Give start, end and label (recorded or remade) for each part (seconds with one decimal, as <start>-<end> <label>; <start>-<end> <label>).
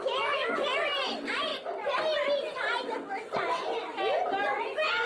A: 0.0-5.1 recorded